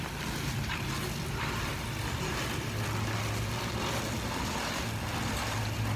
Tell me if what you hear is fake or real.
real